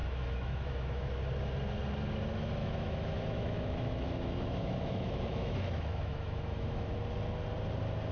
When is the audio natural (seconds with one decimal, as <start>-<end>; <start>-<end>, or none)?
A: 1.1-2.6; 6.9-8.1